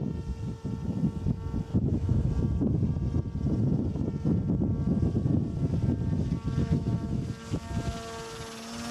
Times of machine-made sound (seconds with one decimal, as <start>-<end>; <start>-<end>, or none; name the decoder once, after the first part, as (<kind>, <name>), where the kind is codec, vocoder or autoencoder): 1.7-2.3 (autoencoder, DAC-VAE); 6.6-7.2